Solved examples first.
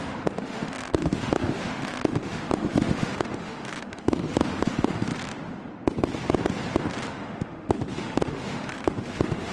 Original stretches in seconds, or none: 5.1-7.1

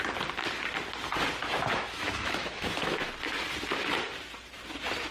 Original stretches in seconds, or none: 0.0-1.4; 3.1-5.1